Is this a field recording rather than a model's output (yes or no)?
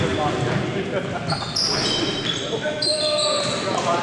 yes